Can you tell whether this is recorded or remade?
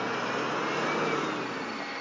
recorded